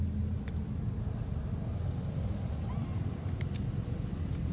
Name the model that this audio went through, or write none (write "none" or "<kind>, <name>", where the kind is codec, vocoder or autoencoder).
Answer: none